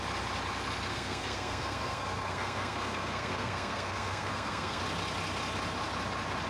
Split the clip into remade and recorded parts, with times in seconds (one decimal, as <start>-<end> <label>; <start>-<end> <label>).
0.0-0.9 recorded; 0.9-4.8 remade; 4.8-6.5 recorded